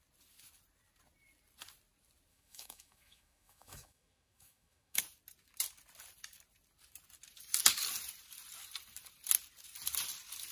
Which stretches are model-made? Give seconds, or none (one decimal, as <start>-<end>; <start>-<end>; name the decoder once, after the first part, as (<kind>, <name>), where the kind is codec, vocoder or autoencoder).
2.3-5.0 (autoencoder, DAC-VAE)